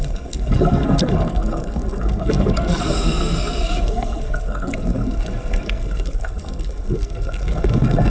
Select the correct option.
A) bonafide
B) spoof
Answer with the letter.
B